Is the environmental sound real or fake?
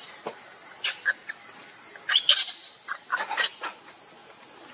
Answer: real